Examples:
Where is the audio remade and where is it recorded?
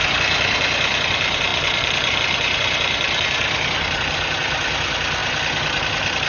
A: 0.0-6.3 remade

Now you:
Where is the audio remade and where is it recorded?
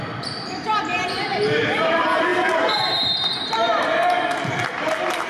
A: 0.0-1.3 remade; 1.3-1.9 recorded; 1.9-5.3 remade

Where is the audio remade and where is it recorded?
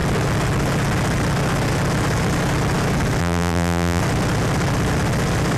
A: 0.0-3.2 recorded; 3.2-4.0 remade; 4.0-5.6 recorded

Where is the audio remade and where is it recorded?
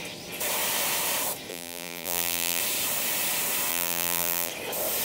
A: 0.0-1.5 recorded; 1.5-2.6 remade; 2.6-3.7 recorded; 3.7-4.5 remade; 4.5-5.0 recorded